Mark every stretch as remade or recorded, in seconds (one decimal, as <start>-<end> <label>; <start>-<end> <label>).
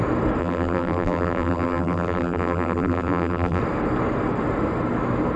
0.0-0.4 recorded; 0.4-3.6 remade; 3.6-5.4 recorded